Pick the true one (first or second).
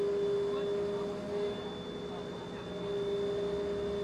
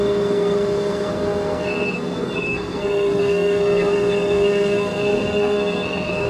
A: first